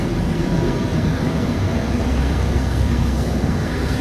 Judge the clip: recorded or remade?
remade